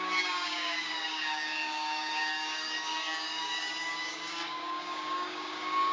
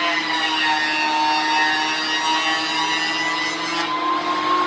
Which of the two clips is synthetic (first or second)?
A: first